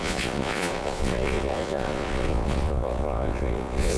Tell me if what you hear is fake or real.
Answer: fake